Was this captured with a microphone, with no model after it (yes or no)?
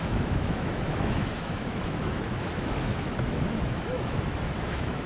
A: no